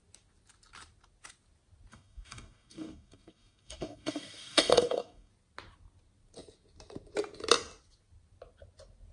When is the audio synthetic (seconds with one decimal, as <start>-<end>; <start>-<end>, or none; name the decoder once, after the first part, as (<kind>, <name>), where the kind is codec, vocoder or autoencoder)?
1.9-5.3 (codec, DAC)